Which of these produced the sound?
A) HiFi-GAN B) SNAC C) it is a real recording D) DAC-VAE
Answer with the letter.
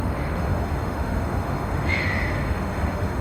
D